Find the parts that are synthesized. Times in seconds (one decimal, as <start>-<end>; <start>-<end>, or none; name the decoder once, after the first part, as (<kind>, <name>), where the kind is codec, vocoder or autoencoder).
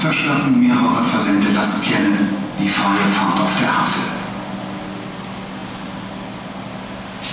0.8-2.3 (vocoder, Vocos)